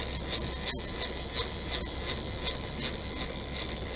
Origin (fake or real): real